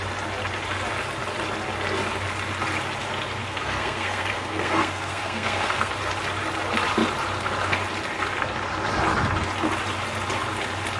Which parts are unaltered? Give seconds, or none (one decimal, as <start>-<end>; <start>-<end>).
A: 0.0-3.4; 5.9-11.0